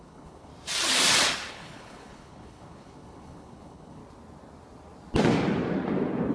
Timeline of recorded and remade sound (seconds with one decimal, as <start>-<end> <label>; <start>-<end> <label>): 0.0-0.5 remade; 0.5-1.5 recorded; 1.5-4.0 remade; 4.0-6.3 recorded